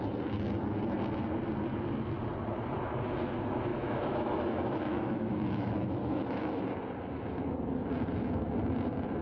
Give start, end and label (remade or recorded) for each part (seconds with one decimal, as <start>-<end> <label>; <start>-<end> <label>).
0.0-3.7 recorded; 3.7-6.6 remade; 6.6-9.2 recorded